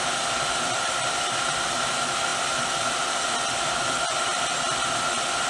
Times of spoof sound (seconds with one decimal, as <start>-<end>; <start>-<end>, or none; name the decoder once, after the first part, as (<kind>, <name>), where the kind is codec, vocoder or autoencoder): 0.0-5.5 (vocoder, BigVGAN v2)